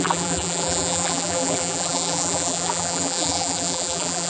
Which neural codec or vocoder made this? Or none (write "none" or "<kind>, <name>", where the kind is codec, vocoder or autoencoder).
vocoder, BigVGAN v2